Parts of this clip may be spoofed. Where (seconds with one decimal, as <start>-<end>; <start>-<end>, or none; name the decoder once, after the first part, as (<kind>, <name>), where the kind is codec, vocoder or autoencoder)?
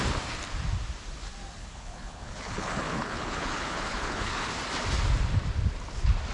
1.6-4.5 (codec, HILCodec)